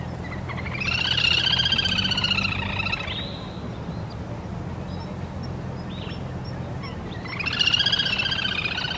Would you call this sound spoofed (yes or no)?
no